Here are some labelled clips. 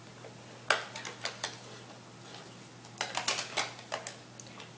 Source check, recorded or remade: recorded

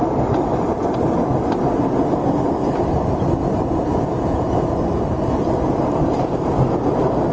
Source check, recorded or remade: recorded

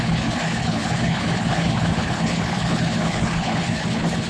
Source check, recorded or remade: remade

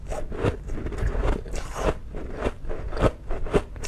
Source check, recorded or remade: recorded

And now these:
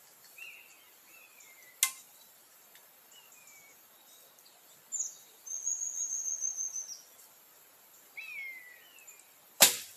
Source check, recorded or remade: recorded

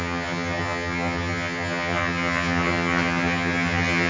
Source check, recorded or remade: remade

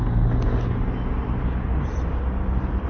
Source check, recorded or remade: recorded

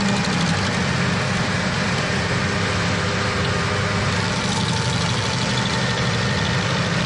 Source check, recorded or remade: recorded